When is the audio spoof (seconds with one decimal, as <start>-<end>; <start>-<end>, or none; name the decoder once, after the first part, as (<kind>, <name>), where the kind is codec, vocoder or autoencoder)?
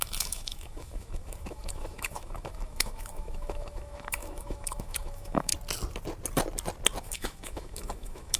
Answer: 0.0-5.5 (autoencoder, DAC-VAE); 7.0-8.4